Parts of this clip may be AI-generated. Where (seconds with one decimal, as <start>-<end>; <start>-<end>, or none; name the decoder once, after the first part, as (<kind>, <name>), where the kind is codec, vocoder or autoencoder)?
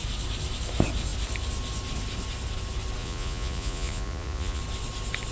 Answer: 3.0-4.6 (vocoder, Vocos)